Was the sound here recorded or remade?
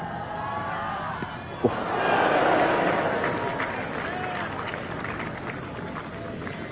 recorded